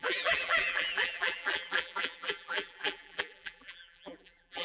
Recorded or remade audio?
remade